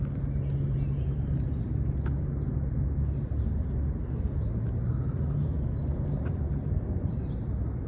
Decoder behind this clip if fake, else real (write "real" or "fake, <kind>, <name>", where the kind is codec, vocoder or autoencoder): real